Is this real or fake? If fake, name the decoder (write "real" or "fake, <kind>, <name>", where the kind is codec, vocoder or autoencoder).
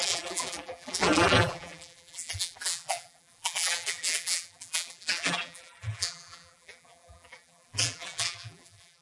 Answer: fake, vocoder, BigVGAN v2